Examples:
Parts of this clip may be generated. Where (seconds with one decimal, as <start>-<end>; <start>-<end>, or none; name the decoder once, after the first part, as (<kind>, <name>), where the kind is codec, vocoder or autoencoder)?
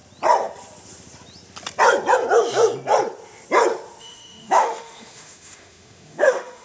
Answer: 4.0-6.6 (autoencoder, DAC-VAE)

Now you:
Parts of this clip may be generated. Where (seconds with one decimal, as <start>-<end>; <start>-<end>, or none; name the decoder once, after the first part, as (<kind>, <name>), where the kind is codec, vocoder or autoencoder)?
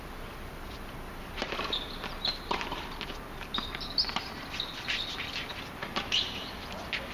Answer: none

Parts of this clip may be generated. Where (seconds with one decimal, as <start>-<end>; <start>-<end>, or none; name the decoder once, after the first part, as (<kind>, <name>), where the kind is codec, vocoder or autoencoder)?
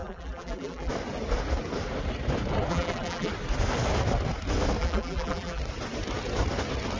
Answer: 0.0-0.9 (vocoder, BigVGAN v2); 2.7-3.3; 4.8-5.6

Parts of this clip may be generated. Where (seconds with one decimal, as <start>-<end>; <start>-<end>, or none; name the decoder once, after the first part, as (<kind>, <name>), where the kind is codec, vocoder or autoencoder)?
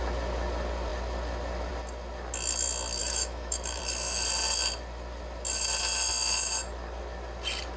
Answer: 3.0-3.8 (autoencoder, DAC-VAE)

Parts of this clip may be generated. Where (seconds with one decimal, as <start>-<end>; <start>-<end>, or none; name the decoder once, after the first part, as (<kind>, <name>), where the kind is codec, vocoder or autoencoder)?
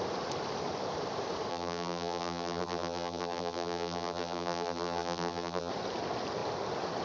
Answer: 1.5-5.7 (vocoder, BigVGAN v2)